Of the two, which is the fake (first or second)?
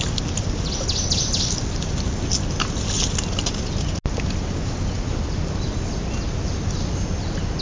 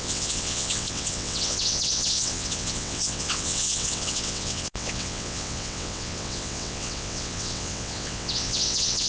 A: second